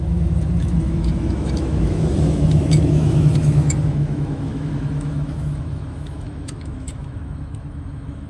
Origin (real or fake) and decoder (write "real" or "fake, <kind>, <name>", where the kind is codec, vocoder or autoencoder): fake, autoencoder, DAC-VAE